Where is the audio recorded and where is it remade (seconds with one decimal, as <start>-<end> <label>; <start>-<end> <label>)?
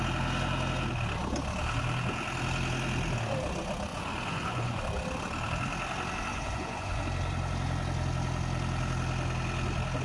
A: 0.0-3.9 recorded; 3.9-4.8 remade; 4.8-6.3 recorded; 6.3-7.0 remade; 7.0-10.0 recorded